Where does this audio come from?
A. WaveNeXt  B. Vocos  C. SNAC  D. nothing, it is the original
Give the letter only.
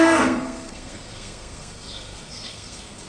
C